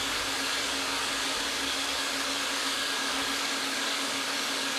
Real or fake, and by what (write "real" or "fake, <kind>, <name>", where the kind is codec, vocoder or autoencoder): fake, codec, DAC